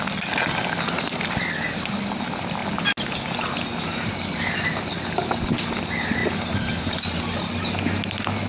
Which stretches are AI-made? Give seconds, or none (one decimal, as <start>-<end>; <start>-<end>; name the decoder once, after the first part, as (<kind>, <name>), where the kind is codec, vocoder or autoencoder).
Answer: none